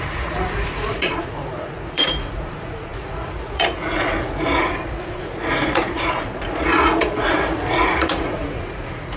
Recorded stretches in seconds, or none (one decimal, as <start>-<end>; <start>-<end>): none